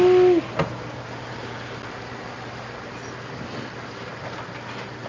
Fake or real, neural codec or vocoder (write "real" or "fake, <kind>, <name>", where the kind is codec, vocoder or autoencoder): real